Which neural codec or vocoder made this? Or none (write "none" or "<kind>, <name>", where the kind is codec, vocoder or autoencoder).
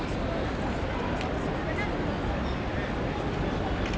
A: none